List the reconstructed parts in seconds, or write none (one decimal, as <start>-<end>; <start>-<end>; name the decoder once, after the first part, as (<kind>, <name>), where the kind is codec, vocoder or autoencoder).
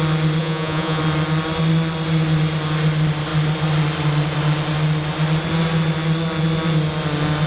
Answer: 0.4-1.0 (vocoder, Vocos)